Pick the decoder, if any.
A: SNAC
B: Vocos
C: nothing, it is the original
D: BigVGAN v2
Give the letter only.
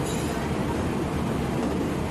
D